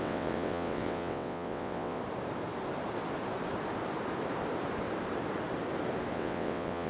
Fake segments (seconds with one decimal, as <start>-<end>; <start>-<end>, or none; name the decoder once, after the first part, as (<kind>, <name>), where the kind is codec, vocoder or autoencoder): 0.0-2.0 (vocoder, WaveNeXt); 6.1-6.9